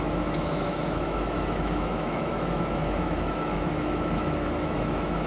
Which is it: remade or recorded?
remade